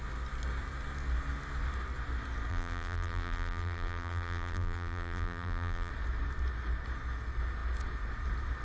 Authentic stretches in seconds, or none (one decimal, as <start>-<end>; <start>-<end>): 0.0-2.5; 5.9-8.6